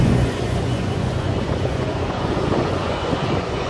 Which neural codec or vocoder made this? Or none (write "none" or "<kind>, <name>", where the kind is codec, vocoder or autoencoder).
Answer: vocoder, Vocos